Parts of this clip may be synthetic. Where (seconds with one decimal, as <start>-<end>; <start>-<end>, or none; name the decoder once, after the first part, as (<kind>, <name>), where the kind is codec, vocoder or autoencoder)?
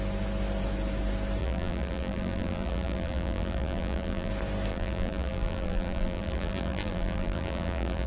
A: 1.4-4.3 (vocoder, BigVGAN v2); 4.7-8.1